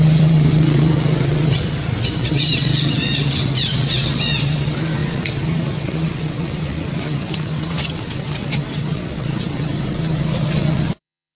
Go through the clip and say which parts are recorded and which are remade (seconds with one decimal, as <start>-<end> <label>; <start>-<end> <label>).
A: 0.0-11.3 remade